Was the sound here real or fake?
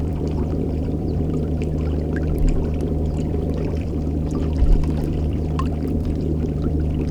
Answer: fake